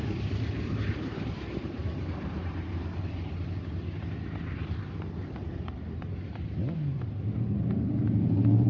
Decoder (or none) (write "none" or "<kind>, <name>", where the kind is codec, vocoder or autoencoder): vocoder, BigVGAN v2